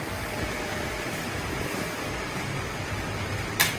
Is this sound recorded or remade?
recorded